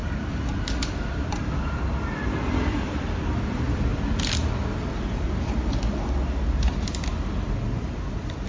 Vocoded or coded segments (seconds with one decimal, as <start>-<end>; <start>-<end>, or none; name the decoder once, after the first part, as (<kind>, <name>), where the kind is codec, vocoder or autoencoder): 1.1-3.9 (vocoder, BigVGAN v2); 6.6-8.5